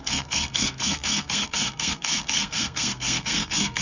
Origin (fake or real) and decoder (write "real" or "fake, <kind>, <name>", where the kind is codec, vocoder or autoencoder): fake, codec, SNAC